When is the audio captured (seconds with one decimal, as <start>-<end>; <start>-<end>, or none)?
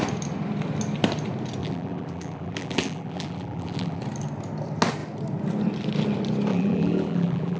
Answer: 0.0-1.6; 4.0-6.5